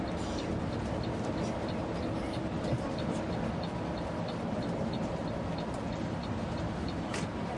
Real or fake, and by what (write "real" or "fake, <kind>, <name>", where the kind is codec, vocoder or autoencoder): real